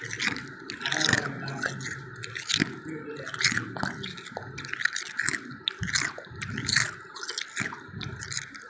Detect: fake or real real